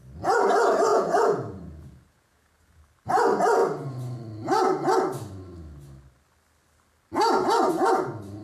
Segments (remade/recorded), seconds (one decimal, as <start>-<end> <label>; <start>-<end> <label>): 0.0-0.9 recorded; 0.9-2.8 remade; 2.8-8.4 recorded